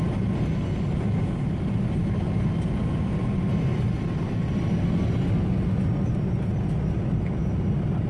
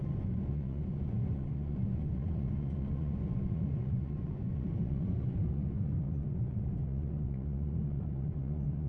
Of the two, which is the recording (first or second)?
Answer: first